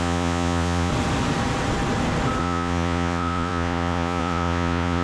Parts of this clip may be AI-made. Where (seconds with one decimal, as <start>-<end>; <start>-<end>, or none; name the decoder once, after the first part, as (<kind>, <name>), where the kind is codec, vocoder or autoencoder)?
0.0-0.9 (vocoder, Vocos); 2.4-5.0